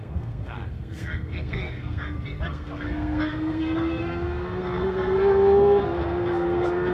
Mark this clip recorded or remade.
remade